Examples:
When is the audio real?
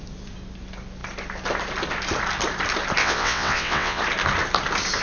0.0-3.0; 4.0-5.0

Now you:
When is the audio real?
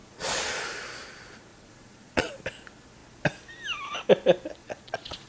0.6-1.5; 2.3-4.6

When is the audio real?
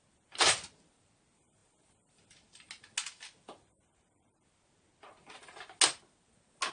0.0-6.7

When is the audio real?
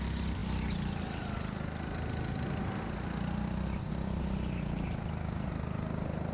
0.0-6.3